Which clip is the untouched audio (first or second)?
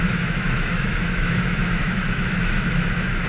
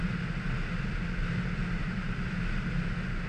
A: second